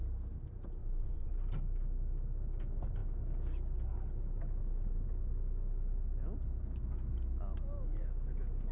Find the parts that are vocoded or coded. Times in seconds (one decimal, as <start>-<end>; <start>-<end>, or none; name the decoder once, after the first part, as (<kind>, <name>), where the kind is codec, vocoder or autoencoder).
0.8-1.3 (vocoder, Vocos)

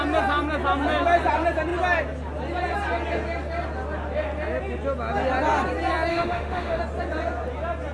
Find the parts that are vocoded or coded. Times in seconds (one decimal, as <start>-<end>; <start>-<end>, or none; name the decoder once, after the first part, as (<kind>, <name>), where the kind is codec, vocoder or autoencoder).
6.1-6.8 (autoencoder, DAC-VAE)

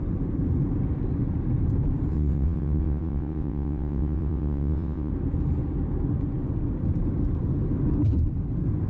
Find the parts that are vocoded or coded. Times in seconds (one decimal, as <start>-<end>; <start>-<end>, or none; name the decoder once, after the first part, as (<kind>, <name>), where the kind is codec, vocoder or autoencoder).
2.1-5.1 (vocoder, WaveNeXt)

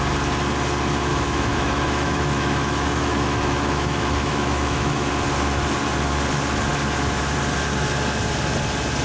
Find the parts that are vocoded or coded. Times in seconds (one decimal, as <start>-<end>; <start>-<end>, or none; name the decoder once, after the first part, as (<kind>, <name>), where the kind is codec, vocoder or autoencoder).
1.1-5.1 (autoencoder, DAC-VAE)

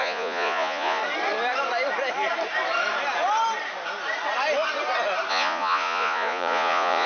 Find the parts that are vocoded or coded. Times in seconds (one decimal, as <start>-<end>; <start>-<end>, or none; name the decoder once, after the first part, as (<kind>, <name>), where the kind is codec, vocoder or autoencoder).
0.0-1.0 (vocoder, Vocos); 5.3-7.1

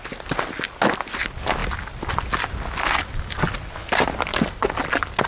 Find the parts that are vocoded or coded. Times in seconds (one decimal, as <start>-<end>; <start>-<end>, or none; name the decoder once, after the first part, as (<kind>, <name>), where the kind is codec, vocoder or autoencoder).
none

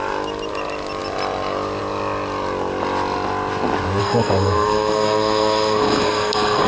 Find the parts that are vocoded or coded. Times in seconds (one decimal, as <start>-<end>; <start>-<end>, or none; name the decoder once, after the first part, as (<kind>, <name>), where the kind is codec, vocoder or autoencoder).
4.0-6.7 (codec, SNAC)

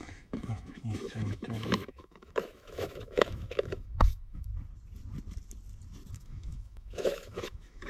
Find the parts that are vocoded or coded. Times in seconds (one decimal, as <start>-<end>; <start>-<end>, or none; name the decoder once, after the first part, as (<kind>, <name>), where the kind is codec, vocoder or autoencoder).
0.0-4.5 (autoencoder, DAC-VAE); 6.1-7.9